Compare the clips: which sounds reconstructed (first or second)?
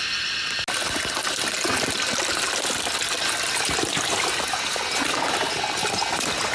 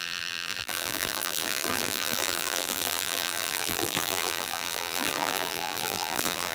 second